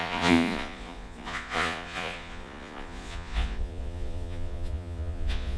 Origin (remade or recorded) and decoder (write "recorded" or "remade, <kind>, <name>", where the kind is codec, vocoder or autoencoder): remade, vocoder, Vocos